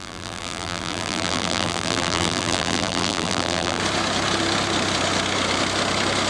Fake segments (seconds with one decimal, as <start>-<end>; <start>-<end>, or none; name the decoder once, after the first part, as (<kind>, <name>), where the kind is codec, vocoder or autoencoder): 0.0-3.8 (vocoder, BigVGAN v2)